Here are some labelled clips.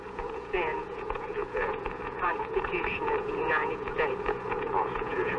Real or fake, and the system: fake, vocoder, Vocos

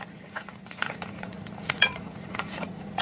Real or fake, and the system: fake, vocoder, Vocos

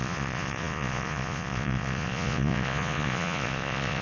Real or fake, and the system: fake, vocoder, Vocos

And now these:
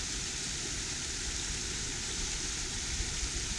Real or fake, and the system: real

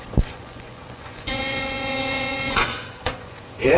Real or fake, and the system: fake, vocoder, Vocos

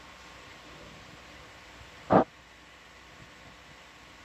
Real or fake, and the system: real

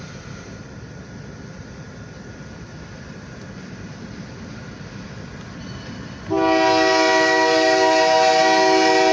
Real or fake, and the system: real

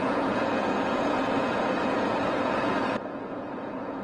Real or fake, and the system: fake, vocoder, Vocos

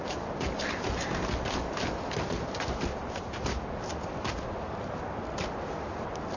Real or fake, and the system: real